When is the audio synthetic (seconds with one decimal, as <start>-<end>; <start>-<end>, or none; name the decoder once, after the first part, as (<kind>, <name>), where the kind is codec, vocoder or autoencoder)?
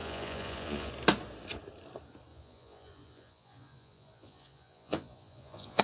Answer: 0.0-0.9 (vocoder, Vocos); 2.3-5.8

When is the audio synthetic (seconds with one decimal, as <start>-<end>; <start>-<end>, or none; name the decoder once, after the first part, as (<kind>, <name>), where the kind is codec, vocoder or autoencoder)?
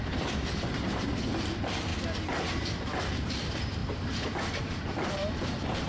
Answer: 0.0-1.9 (vocoder, BigVGAN v2); 2.7-3.8; 4.6-5.9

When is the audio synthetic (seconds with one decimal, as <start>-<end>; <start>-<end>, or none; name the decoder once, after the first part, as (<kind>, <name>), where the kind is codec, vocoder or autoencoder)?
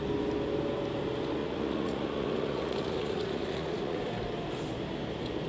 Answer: 1.4-4.0 (vocoder, Vocos)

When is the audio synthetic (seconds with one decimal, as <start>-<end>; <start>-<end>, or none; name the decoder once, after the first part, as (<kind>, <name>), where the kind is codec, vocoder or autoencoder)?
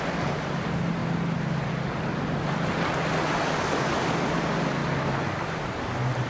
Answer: none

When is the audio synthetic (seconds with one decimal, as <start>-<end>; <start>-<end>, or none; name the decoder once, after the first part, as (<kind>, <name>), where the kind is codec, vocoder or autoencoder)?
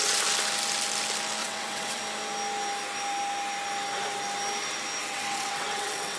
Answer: 1.4-2.0 (vocoder, WaveNeXt); 5.0-6.2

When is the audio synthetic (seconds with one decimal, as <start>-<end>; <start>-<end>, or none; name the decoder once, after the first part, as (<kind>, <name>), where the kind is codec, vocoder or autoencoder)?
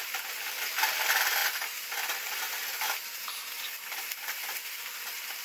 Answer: 0.0-1.4 (vocoder, BigVGAN v2); 3.5-5.4